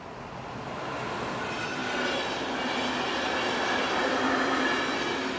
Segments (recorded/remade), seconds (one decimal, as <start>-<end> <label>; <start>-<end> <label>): 0.0-5.4 recorded